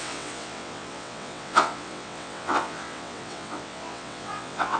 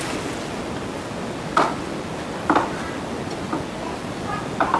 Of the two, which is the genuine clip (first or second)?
second